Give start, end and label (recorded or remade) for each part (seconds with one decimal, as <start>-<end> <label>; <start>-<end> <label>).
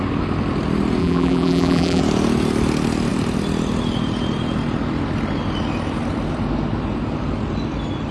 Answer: 0.0-1.0 recorded; 1.0-2.0 remade; 2.0-8.1 recorded